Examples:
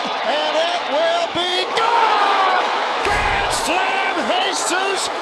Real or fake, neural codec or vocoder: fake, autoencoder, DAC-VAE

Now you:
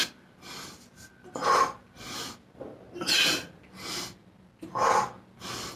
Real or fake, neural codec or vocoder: real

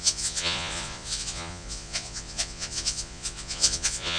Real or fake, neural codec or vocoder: fake, vocoder, Vocos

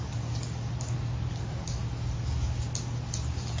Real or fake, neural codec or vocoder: real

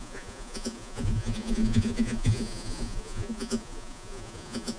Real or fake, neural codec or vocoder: fake, vocoder, Vocos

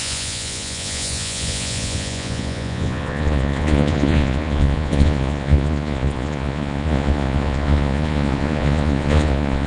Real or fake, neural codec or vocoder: fake, vocoder, Vocos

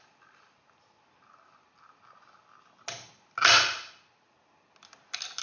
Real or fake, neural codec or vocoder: real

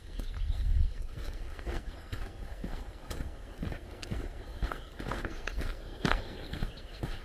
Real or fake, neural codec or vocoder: fake, codec, SNAC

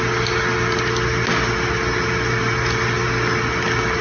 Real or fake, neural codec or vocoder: real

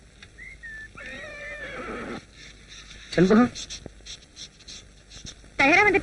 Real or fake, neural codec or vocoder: real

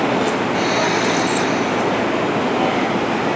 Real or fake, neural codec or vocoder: real